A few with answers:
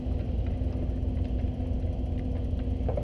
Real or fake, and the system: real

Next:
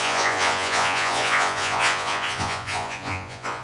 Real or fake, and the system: fake, vocoder, Vocos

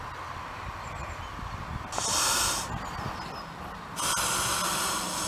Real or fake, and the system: real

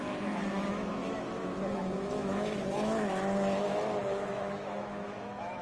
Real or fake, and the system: fake, autoencoder, DAC-VAE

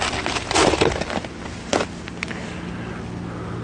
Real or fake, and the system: real